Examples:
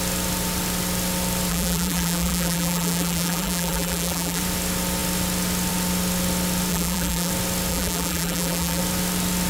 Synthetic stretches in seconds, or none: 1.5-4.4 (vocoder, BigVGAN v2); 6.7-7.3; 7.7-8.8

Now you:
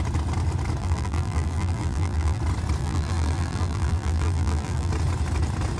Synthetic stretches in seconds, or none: 0.8-2.4 (vocoder, BigVGAN v2); 2.8-4.9

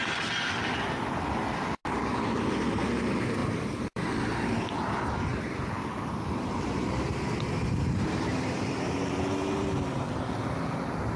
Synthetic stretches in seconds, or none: 3.4-4.4 (vocoder, BigVGAN v2); 5.3-8.5

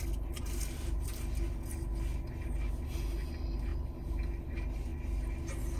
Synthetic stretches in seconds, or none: none

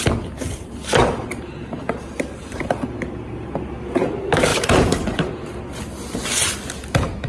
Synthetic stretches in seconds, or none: 1.2-2.9 (vocoder, BigVGAN v2); 4.5-5.5

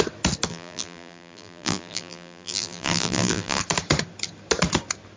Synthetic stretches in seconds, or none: 0.5-3.6 (vocoder, BigVGAN v2)